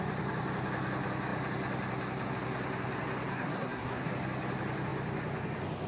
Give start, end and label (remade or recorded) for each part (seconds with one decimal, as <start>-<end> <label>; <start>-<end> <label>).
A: 0.0-3.3 recorded; 3.3-4.1 remade; 4.1-5.9 recorded